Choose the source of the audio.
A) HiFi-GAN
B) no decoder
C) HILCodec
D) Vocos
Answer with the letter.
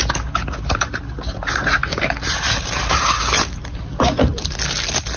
B